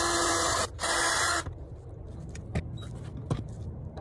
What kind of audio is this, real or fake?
real